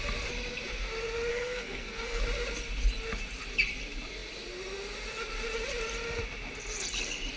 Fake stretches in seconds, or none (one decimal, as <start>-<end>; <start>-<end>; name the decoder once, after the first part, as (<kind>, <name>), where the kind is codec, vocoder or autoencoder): 1.3-2.2 (codec, SNAC)